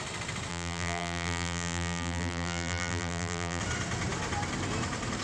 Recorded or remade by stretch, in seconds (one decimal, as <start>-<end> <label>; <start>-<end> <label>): 0.0-0.5 recorded; 0.5-3.6 remade; 3.6-5.2 recorded